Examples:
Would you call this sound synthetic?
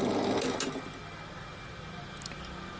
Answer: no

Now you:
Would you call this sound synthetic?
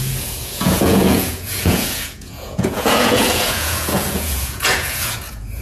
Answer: yes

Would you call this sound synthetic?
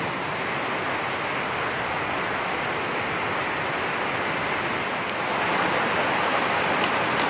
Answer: no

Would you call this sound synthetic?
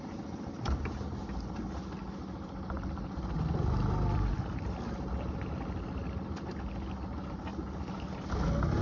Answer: no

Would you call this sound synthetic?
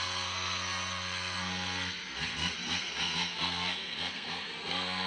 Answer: yes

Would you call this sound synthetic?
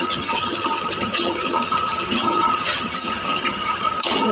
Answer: yes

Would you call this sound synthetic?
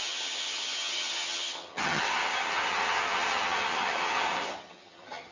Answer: yes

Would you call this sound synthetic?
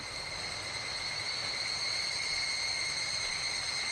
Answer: no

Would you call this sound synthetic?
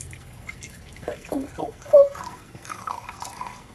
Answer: yes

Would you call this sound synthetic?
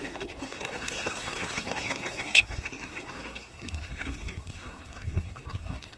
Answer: yes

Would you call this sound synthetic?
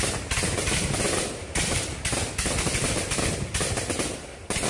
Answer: no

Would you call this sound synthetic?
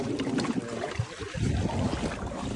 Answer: no